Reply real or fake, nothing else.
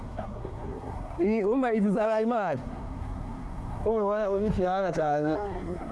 fake